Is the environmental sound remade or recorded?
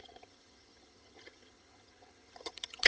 remade